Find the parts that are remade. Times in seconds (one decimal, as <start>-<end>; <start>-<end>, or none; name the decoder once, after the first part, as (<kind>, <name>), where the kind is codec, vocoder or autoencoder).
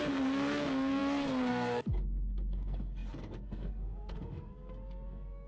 0.0-5.5 (codec, SNAC)